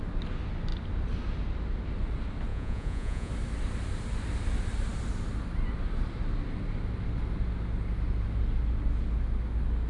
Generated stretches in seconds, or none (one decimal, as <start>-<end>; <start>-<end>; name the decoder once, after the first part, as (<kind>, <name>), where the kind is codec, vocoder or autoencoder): 2.5-3.3 (vocoder, Vocos)